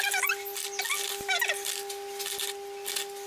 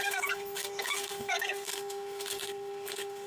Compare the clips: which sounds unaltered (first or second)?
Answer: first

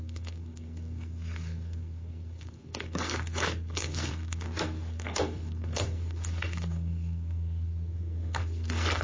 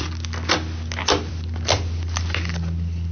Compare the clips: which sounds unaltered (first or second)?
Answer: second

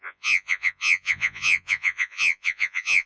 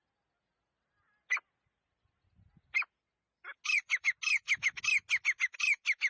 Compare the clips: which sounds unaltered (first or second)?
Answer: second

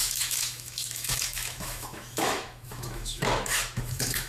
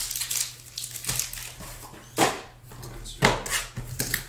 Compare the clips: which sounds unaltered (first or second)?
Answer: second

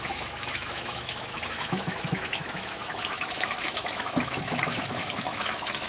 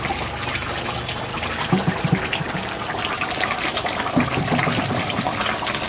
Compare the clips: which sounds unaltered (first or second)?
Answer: second